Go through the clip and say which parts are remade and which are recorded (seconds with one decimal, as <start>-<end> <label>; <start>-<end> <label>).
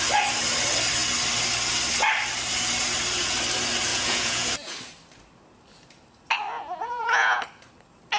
0.0-3.9 recorded; 3.9-4.5 remade; 4.5-6.8 recorded; 6.8-7.4 remade; 7.4-8.2 recorded